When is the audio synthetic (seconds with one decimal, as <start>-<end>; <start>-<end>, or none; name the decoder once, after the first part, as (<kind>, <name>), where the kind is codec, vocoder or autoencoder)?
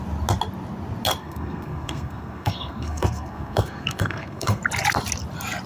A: 1.2-4.6 (codec, SNAC)